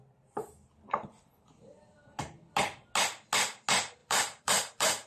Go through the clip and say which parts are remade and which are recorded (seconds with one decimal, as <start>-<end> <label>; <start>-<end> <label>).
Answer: 0.0-4.0 recorded; 4.0-5.1 remade